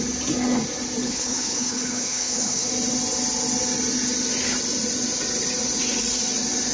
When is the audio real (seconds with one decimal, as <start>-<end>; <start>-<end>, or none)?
0.0-1.0; 2.7-6.7